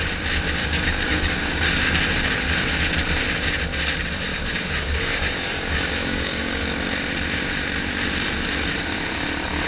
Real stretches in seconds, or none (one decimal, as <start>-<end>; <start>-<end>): 0.0-0.6; 1.9-4.3; 6.6-9.7